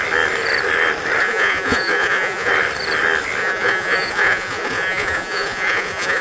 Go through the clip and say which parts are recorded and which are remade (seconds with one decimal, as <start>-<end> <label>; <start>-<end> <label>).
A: 0.0-1.2 recorded; 1.2-2.5 remade; 2.5-3.4 recorded; 3.4-6.2 remade